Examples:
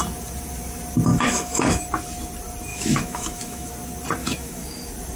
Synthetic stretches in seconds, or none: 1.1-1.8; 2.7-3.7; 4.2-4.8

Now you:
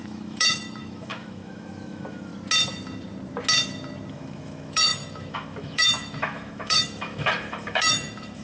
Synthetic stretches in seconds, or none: 0.0-2.3; 4.1-8.4

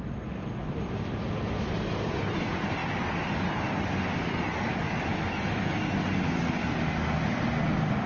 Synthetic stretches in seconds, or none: 4.7-5.7

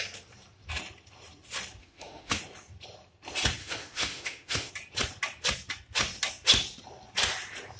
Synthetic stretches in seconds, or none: 1.8-2.4; 3.6-4.7

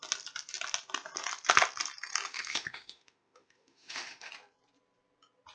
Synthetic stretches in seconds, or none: 2.3-4.3

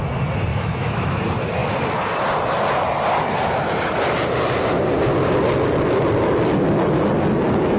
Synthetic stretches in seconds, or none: 0.5-1.2